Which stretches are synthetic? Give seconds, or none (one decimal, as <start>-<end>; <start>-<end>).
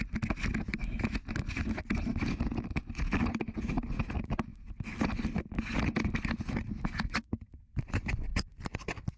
none